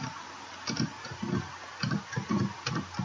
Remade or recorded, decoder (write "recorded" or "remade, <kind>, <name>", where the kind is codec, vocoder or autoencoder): recorded